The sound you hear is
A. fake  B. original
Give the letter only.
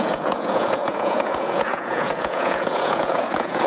A